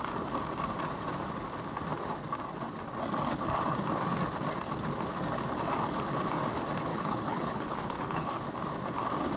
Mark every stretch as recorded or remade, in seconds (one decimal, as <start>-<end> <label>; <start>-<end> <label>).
0.0-6.9 recorded; 6.9-8.4 remade; 8.4-9.4 recorded